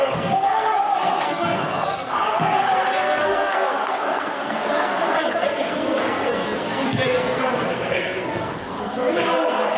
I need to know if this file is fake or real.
fake